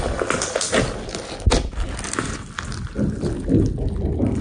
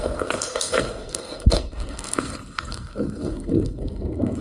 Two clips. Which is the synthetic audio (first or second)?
second